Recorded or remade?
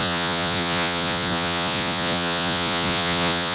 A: remade